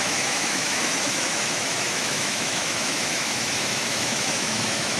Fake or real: fake